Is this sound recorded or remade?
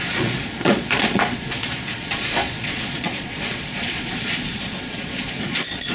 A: remade